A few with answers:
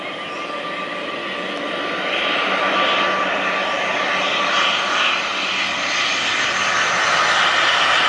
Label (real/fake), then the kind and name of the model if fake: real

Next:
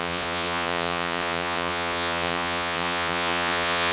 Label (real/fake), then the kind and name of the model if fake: fake, vocoder, Vocos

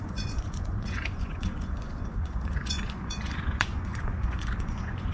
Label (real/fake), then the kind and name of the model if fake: fake, vocoder, Vocos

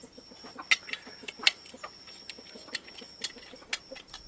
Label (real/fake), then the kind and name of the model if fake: real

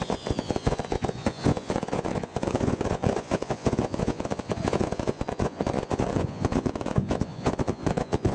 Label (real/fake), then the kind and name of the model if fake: fake, vocoder, Vocos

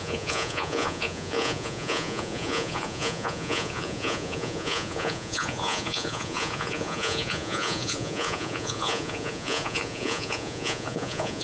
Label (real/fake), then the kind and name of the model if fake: fake, vocoder, Vocos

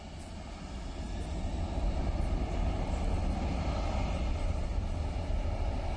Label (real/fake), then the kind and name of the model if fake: real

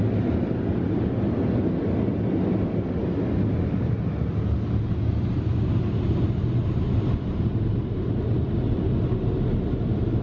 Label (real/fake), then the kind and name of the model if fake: real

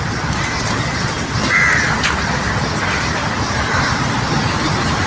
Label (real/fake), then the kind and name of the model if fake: real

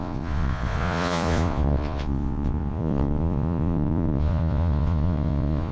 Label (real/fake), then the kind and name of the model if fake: fake, vocoder, Vocos